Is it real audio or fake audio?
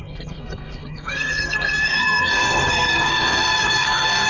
fake